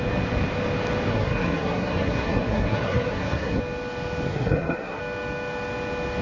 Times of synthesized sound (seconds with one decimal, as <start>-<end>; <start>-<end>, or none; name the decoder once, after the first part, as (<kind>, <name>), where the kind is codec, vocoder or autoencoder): 1.1-3.6 (codec, SNAC); 4.3-5.0

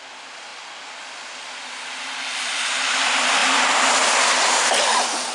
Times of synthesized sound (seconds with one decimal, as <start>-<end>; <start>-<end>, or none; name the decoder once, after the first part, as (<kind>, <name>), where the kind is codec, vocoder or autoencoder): none

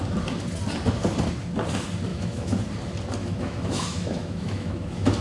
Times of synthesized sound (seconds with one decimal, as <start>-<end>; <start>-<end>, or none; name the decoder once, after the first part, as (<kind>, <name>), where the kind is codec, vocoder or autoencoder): 2.1-2.6 (autoencoder, DAC-VAE); 3.2-5.2

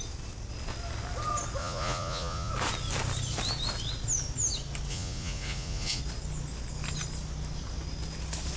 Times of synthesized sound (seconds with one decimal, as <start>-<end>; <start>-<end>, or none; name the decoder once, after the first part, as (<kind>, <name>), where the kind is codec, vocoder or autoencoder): 1.6-2.5 (vocoder, Vocos); 4.9-6.0

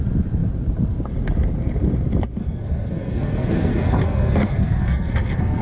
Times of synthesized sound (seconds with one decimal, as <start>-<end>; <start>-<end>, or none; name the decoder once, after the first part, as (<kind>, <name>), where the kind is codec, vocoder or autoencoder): 2.4-5.6 (codec, SNAC)

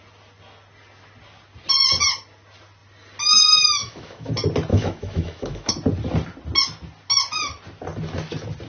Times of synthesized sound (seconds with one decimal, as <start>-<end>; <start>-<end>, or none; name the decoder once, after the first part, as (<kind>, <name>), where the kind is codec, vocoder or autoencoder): 3.8-4.3 (autoencoder, DAC-VAE); 4.7-5.7

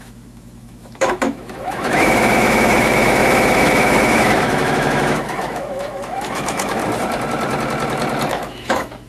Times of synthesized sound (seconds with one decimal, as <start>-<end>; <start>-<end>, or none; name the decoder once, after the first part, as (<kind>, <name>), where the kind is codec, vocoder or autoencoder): 0.0-6.8 (autoencoder, DAC-VAE); 8.3-9.1

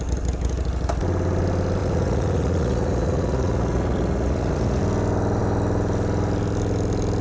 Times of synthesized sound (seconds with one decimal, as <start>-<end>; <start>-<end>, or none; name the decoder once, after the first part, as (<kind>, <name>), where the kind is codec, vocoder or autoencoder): 1.8-4.8 (vocoder, Vocos)